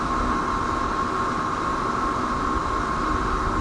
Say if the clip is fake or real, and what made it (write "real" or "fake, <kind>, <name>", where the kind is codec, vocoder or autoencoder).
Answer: real